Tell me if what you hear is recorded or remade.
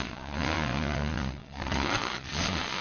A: remade